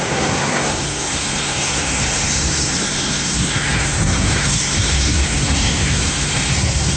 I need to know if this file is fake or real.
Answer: fake